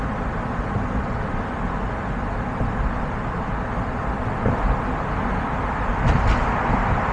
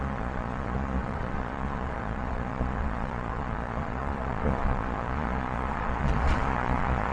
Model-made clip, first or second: second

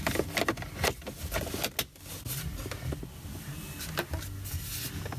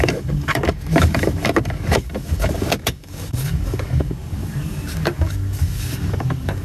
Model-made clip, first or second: second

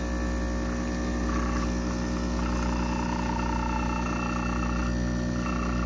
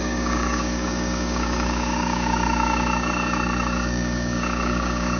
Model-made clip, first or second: second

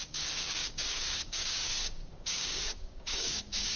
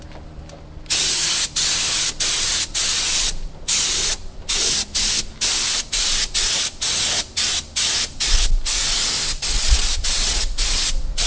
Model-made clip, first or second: first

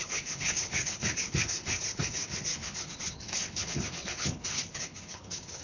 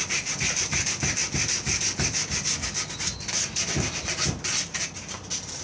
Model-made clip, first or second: first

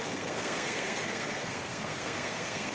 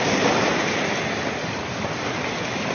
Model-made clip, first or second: first